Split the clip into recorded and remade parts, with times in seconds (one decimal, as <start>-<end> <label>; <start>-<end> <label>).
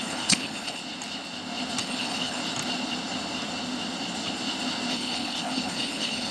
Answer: 0.0-0.8 remade; 0.8-1.8 recorded; 1.8-2.4 remade; 2.4-4.9 recorded; 4.9-6.3 remade